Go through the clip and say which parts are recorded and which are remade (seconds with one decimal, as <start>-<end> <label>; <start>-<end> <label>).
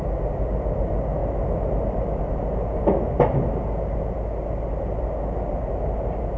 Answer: 0.0-6.4 recorded